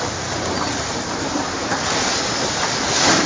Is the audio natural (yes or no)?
no